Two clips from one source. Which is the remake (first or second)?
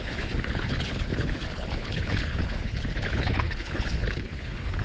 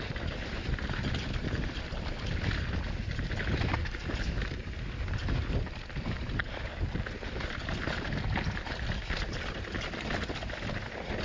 first